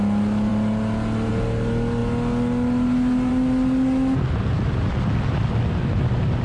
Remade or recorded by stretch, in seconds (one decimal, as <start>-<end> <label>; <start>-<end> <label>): 0.0-6.4 recorded